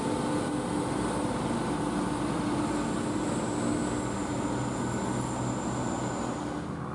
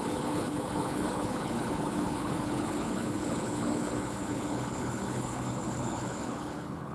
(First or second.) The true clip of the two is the first